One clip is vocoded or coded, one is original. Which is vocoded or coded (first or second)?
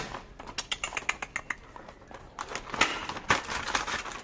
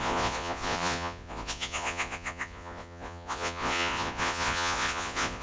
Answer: second